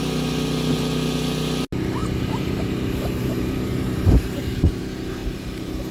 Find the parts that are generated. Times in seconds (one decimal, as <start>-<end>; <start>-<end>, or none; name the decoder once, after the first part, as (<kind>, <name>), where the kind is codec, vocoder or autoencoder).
2.0-4.8 (vocoder, BigVGAN v2); 5.2-5.9

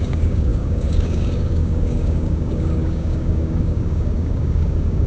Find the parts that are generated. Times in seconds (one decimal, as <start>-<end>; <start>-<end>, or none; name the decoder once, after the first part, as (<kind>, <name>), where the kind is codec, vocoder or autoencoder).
0.0-5.1 (codec, DAC)

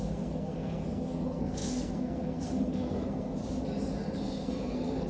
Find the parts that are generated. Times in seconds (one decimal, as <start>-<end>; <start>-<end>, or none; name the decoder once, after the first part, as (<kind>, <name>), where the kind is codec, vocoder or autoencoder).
0.0-3.4 (codec, SNAC); 4.2-5.1

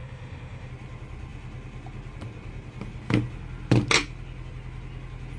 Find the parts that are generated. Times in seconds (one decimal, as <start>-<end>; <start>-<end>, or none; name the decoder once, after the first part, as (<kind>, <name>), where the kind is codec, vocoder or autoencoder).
0.0-0.7 (autoencoder, DAC-VAE)

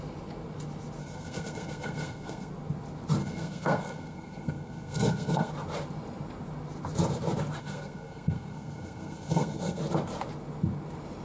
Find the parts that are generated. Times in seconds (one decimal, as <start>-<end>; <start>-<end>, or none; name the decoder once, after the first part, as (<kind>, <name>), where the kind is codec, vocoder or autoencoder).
1.0-2.5 (codec, SNAC); 3.2-5.5; 7.6-9.8